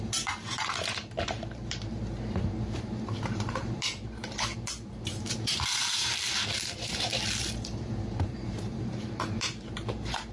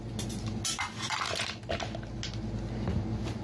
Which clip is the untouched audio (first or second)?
second